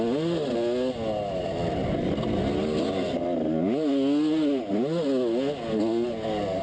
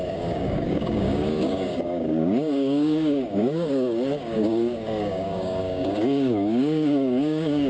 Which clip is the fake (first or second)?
second